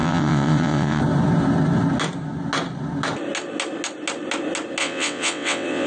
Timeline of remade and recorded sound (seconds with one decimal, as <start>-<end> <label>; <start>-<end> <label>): 0.0-1.0 remade; 1.0-4.8 recorded; 4.8-5.9 remade